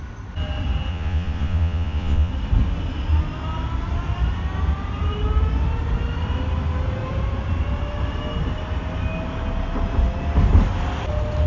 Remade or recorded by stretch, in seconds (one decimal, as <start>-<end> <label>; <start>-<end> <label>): 0.0-0.9 recorded; 0.9-2.3 remade; 2.3-11.5 recorded